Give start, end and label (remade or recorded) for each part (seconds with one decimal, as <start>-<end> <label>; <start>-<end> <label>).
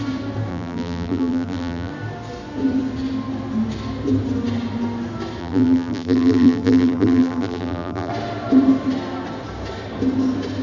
0.0-0.5 recorded; 0.5-1.9 remade; 1.9-5.4 recorded; 5.4-8.1 remade; 8.1-10.6 recorded